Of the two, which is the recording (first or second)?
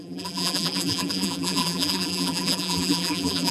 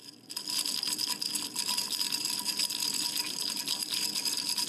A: second